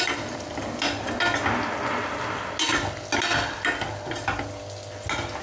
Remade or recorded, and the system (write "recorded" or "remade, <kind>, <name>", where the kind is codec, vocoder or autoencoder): recorded